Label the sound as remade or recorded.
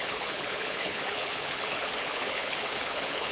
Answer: remade